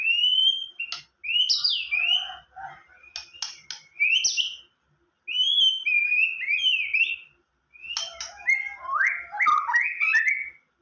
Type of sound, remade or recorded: recorded